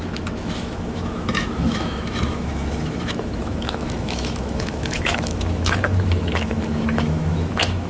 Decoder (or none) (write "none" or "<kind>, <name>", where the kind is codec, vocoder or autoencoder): autoencoder, DAC-VAE